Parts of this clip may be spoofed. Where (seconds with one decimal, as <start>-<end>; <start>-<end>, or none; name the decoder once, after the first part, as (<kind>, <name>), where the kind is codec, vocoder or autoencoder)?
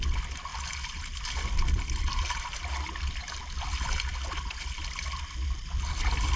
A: none